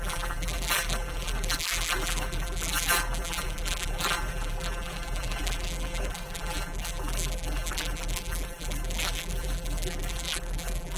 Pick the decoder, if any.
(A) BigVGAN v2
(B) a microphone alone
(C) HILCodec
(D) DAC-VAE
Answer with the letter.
A